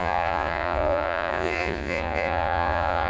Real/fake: fake